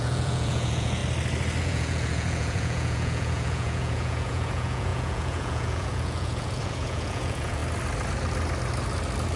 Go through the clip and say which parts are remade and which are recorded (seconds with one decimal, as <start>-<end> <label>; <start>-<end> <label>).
0.0-1.0 remade; 1.0-1.6 recorded; 1.6-7.6 remade; 7.6-9.4 recorded